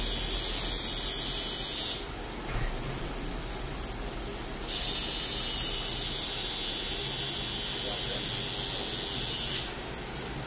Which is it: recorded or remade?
recorded